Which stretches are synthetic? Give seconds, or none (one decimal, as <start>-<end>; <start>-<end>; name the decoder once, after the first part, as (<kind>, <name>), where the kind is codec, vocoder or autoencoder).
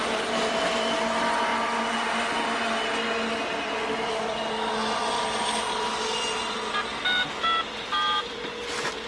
none